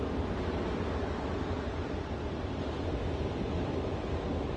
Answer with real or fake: real